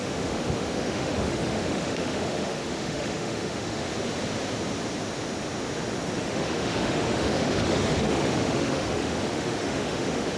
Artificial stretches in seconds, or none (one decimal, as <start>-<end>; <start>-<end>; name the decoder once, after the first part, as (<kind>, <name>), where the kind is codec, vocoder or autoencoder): 0.0-3.9 (autoencoder, DAC-VAE); 6.2-10.4